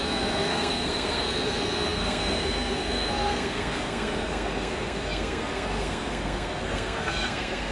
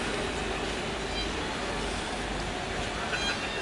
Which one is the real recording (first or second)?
second